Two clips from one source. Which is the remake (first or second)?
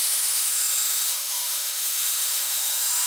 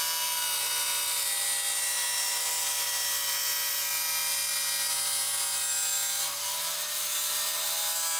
first